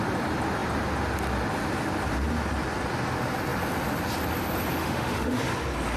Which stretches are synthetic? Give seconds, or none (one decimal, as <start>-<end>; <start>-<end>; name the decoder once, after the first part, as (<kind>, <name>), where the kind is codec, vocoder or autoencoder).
4.8-5.4 (autoencoder, DAC-VAE)